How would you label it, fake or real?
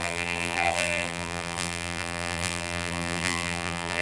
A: fake